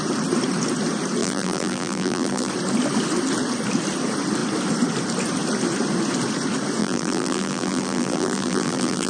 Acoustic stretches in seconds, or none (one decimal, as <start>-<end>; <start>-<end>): 0.0-1.2; 2.5-6.8